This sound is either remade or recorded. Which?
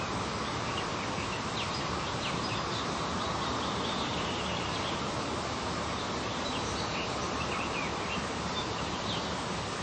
recorded